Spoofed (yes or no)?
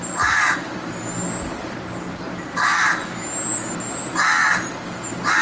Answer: no